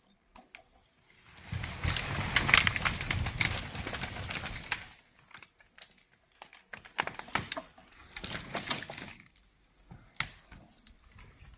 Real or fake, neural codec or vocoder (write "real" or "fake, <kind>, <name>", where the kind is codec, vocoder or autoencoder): real